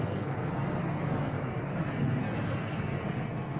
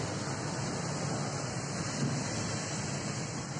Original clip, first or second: second